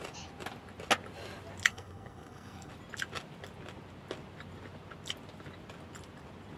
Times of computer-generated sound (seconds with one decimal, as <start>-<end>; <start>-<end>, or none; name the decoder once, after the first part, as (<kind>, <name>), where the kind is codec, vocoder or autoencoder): 1.7-2.7 (codec, SNAC)

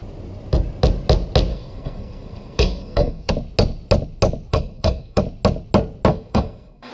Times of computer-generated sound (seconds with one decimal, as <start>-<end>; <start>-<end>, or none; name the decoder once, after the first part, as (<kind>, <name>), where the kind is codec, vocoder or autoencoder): 1.5-3.3 (codec, SNAC); 4.5-5.2; 6.1-6.9